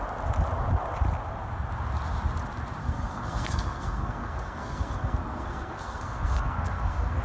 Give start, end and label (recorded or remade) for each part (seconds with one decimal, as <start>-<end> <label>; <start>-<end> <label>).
0.0-2.8 recorded; 2.8-7.2 remade